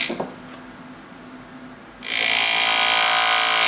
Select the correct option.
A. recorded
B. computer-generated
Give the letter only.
A